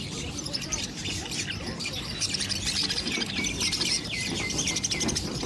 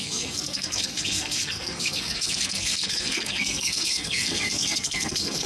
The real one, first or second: first